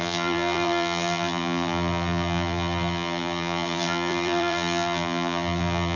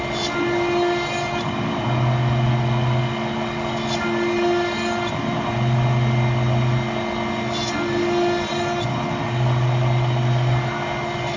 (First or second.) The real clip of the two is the second